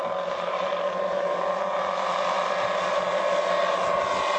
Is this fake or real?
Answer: real